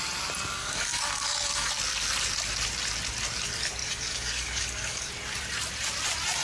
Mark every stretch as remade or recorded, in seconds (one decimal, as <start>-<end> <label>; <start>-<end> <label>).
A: 0.0-0.6 recorded; 0.6-1.7 remade; 1.7-3.8 recorded; 3.8-5.1 remade; 5.1-6.4 recorded